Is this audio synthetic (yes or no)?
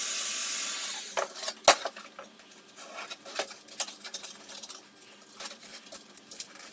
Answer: no